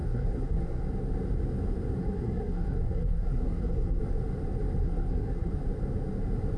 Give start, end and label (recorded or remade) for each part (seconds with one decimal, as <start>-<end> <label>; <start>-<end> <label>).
0.0-0.8 remade; 0.8-2.0 recorded; 2.0-4.0 remade; 4.0-4.8 recorded; 4.8-5.5 remade; 5.5-6.6 recorded